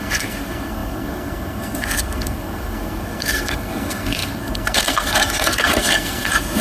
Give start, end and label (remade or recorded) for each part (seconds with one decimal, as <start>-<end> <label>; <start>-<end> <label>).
0.0-6.6 remade